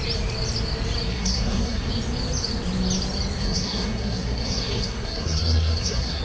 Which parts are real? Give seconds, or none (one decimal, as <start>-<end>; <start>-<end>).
0.0-1.1; 1.9-3.4